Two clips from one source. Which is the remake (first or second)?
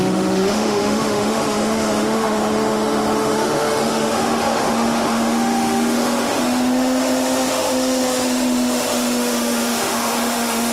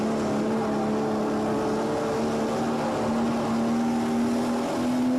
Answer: first